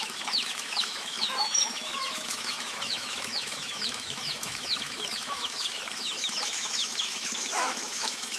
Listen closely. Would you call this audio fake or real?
fake